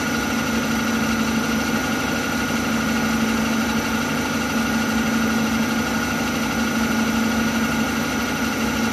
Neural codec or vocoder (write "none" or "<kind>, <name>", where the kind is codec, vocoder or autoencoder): none